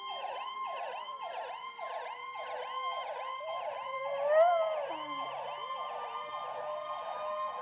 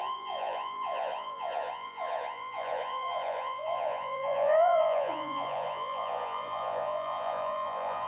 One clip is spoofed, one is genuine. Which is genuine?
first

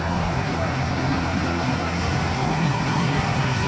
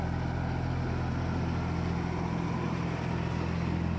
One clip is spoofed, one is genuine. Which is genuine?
second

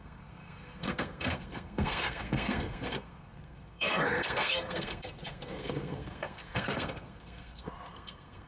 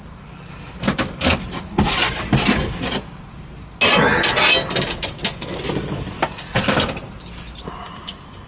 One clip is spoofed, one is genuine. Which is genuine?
second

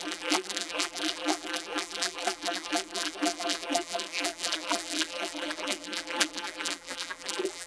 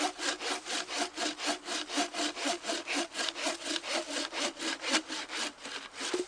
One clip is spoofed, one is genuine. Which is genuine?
second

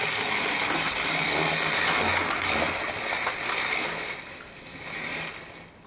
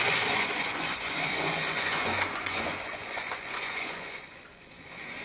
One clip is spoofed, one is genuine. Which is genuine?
first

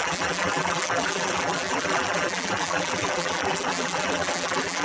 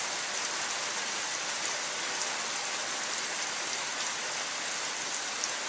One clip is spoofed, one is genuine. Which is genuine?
second